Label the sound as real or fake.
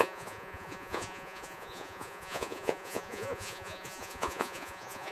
fake